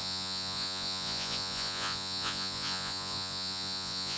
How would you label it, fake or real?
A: fake